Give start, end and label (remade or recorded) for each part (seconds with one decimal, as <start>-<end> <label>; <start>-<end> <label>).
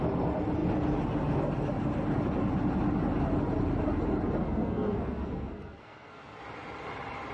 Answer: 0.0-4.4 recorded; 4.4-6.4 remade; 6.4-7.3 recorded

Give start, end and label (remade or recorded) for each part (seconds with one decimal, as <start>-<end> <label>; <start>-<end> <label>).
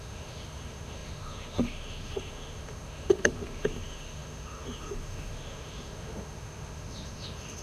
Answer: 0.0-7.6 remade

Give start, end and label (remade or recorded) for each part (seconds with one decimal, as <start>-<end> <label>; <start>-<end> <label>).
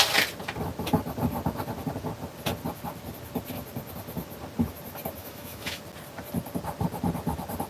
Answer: 0.0-5.2 recorded; 5.2-5.8 remade; 5.8-7.7 recorded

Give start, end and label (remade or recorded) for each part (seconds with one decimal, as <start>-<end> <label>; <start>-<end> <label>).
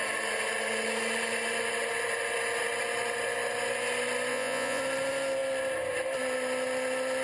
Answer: 0.0-4.3 recorded; 4.3-4.8 remade; 4.8-7.2 recorded